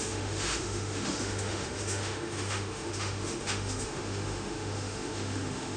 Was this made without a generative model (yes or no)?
no